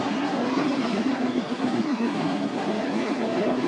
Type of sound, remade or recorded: remade